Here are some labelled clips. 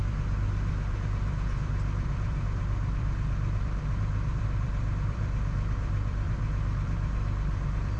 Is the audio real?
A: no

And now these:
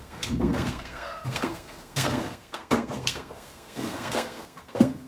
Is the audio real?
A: no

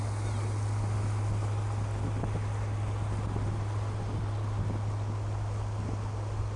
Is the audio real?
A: yes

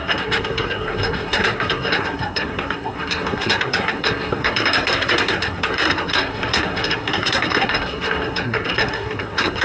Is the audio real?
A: no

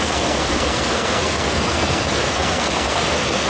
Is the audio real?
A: no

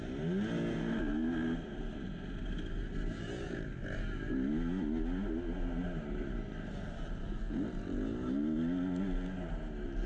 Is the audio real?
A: yes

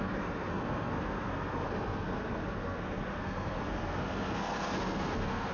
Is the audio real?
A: no